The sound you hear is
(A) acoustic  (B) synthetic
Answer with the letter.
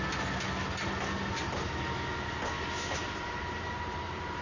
A